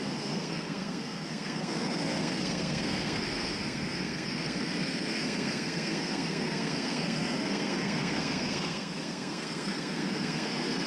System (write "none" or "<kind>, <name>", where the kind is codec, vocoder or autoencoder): codec, SNAC